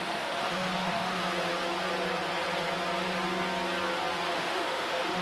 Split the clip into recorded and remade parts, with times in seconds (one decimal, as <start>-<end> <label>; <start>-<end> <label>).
0.0-1.2 remade; 1.2-4.3 recorded; 4.3-5.2 remade